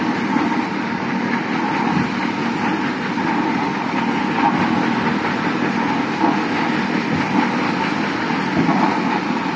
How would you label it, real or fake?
fake